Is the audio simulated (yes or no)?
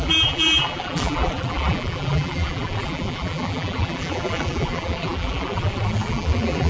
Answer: yes